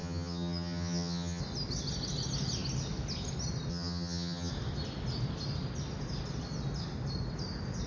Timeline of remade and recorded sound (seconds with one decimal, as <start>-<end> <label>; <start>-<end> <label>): 0.0-1.4 remade; 1.4-3.7 recorded; 3.7-4.5 remade; 4.5-7.9 recorded